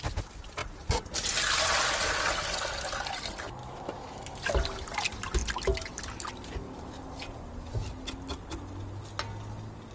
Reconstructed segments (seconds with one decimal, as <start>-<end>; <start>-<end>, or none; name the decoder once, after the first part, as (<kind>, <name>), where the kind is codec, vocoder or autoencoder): 3.6-4.2 (autoencoder, DAC-VAE)